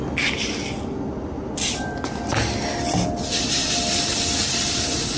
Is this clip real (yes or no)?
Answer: yes